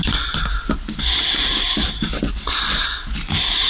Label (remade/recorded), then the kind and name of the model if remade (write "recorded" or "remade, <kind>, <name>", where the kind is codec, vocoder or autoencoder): recorded